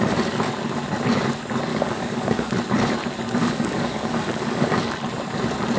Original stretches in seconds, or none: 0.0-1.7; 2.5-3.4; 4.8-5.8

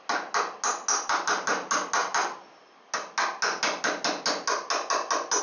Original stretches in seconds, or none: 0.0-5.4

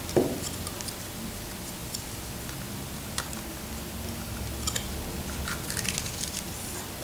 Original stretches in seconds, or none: 0.0-1.8; 2.3-7.0

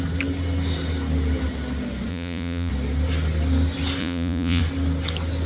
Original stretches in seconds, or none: 0.0-2.1; 2.7-4.0; 4.6-5.5

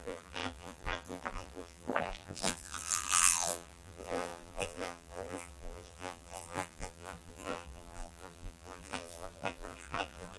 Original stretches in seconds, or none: none

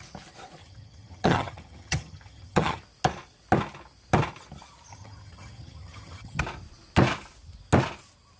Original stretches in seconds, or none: 0.0-0.6; 2.8-4.9; 6.4-8.4